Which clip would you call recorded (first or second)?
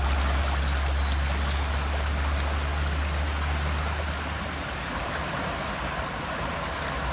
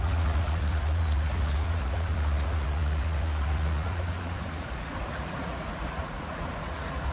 first